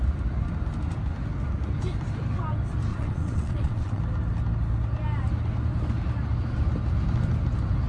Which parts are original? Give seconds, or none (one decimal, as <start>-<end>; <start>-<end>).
0.0-2.9; 4.0-7.9

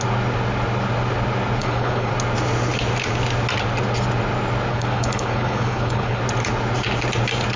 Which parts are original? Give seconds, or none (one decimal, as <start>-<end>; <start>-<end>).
0.0-1.6; 2.1-4.7; 6.2-7.6

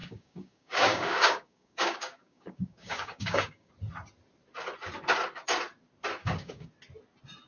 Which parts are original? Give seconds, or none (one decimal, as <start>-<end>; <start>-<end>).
3.7-6.2; 6.7-7.5

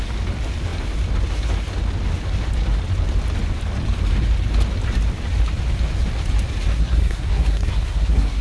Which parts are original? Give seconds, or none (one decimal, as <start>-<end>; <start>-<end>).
0.0-6.7